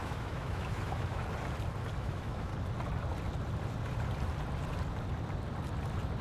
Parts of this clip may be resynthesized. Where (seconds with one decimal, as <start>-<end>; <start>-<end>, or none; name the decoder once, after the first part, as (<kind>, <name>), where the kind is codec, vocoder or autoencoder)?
0.0-1.2 (autoencoder, DAC-VAE); 2.0-2.5